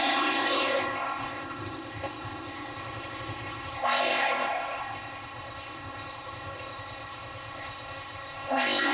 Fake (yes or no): yes